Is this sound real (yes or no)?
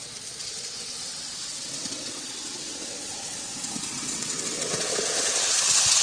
no